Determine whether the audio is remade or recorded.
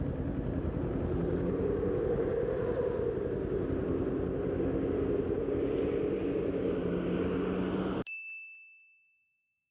recorded